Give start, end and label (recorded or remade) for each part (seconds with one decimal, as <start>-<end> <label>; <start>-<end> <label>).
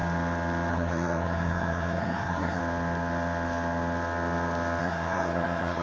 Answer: 0.0-0.7 recorded; 0.7-2.6 remade; 2.6-4.8 recorded; 4.8-5.8 remade